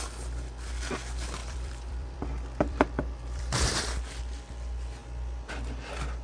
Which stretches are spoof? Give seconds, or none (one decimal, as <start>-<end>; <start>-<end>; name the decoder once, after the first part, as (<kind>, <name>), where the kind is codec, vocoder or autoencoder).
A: 1.4-4.2 (vocoder, BigVGAN v2)